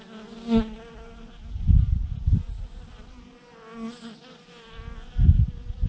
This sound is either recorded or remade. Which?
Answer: recorded